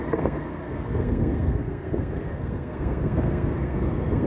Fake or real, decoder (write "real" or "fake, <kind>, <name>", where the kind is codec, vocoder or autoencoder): fake, codec, SNAC